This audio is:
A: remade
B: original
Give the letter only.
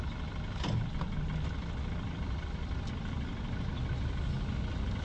B